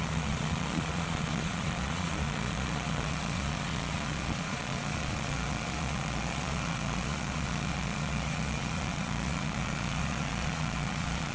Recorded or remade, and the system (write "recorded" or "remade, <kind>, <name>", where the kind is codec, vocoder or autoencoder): remade, vocoder, Vocos